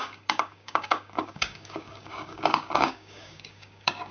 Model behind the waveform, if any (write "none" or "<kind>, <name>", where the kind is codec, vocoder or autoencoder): codec, DAC